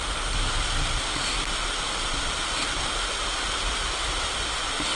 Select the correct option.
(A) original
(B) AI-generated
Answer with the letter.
A